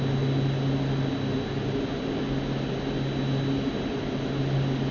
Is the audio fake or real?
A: real